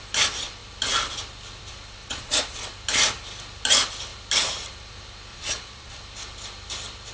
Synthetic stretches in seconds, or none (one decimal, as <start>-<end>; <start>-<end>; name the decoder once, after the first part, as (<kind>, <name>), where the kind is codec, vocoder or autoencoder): 2.0-2.5 (vocoder, Vocos); 5.3-6.0